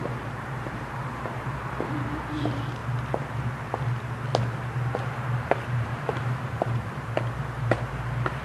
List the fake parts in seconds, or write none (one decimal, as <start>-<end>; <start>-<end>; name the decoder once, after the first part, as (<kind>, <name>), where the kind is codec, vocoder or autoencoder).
0.0-2.8 (vocoder, BigVGAN v2); 5.2-8.4